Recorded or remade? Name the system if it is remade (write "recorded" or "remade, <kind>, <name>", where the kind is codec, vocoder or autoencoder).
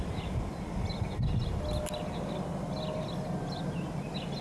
recorded